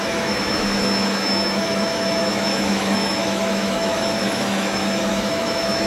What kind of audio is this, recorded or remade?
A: remade